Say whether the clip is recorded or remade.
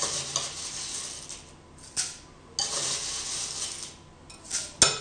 recorded